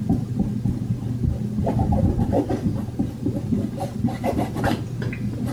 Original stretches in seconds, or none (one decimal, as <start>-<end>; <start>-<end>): 0.0-5.5